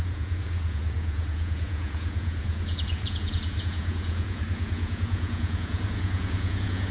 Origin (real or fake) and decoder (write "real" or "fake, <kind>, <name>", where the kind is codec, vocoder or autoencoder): fake, vocoder, Vocos